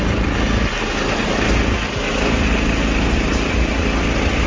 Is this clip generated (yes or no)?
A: no